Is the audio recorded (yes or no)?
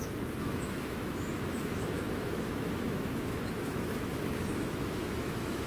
no